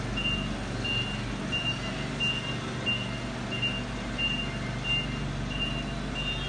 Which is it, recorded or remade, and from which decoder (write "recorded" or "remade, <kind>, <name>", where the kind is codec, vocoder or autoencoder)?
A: recorded